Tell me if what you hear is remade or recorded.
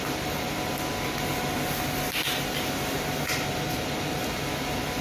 recorded